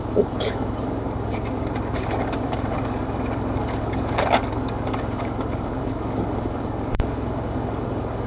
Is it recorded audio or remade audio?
remade